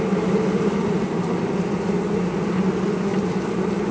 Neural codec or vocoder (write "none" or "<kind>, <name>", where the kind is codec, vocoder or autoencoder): none